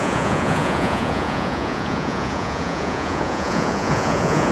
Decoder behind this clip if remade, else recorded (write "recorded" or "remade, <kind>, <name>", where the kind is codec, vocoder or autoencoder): remade, vocoder, Vocos